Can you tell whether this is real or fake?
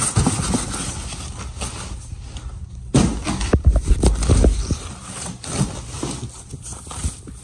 real